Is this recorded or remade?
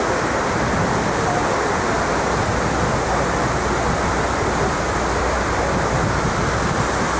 recorded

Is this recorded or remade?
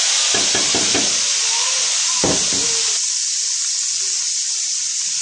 recorded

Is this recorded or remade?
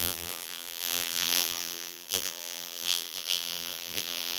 remade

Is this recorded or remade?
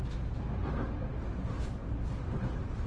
recorded